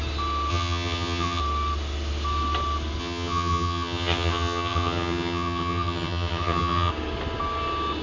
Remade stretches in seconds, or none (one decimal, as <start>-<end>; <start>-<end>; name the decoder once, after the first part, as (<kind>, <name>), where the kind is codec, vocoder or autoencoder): 0.5-1.4 (vocoder, HiFi-GAN); 3.0-6.9